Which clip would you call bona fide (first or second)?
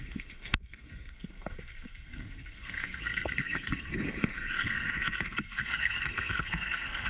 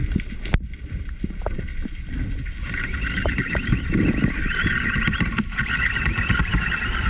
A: second